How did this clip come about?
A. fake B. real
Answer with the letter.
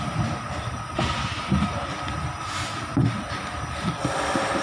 B